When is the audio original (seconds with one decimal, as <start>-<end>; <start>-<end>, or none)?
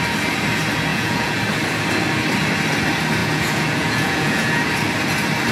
0.0-0.9; 1.4-3.2; 4.6-5.5